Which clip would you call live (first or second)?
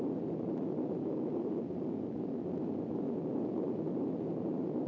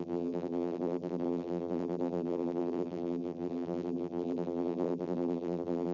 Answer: first